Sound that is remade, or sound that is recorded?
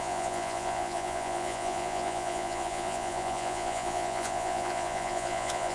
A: remade